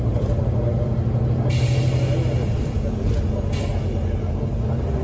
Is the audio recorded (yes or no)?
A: yes